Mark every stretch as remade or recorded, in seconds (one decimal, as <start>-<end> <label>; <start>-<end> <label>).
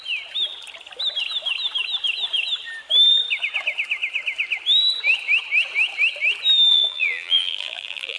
0.0-6.7 recorded; 6.7-8.2 remade